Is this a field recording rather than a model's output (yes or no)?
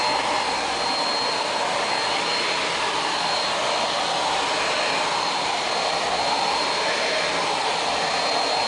yes